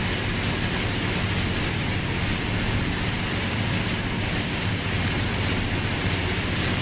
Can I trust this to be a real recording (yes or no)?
yes